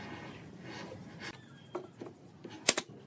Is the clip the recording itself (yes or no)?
yes